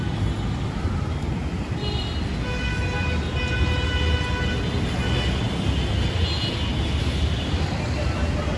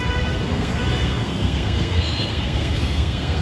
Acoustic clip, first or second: first